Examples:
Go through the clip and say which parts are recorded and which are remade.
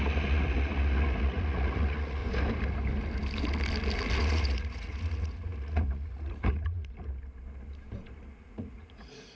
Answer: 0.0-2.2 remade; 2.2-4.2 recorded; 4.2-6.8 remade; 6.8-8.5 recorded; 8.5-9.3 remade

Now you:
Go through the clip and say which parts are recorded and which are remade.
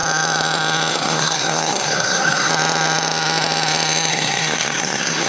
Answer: 0.0-0.9 recorded; 0.9-2.5 remade; 2.5-4.1 recorded; 4.1-5.3 remade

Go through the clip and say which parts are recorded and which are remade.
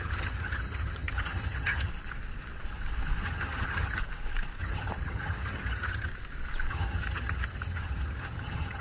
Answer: 0.0-1.9 remade; 1.9-3.2 recorded; 3.2-4.0 remade; 4.0-4.6 recorded; 4.6-6.1 remade; 6.1-6.7 recorded; 6.7-8.8 remade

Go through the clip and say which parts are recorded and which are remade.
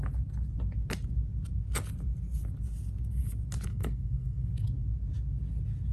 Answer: 0.0-3.7 recorded; 3.7-4.5 remade; 4.5-5.9 recorded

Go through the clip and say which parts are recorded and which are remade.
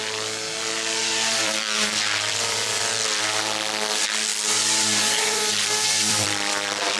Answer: 0.0-1.0 recorded; 1.0-2.8 remade; 2.8-4.3 recorded; 4.3-7.0 remade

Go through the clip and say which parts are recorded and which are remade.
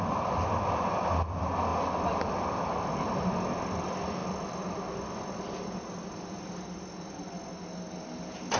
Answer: 0.0-8.6 recorded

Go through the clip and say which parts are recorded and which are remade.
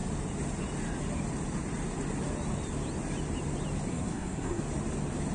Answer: 0.0-3.9 recorded; 3.9-4.6 remade; 4.6-5.3 recorded